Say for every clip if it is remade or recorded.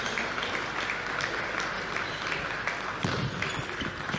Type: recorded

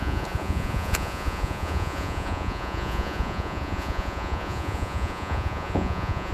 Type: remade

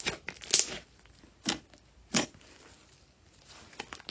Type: recorded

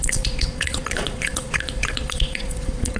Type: remade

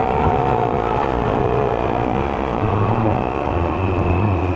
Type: remade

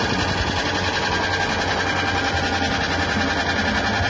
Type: recorded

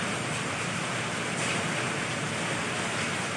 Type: recorded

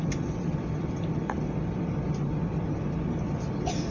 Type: recorded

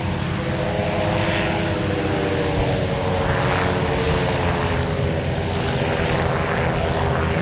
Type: recorded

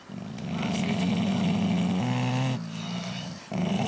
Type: recorded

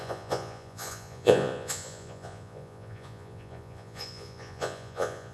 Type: remade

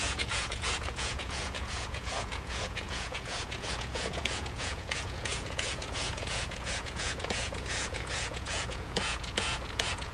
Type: remade